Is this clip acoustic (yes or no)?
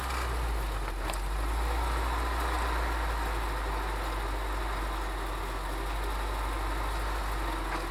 yes